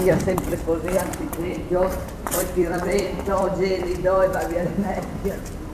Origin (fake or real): fake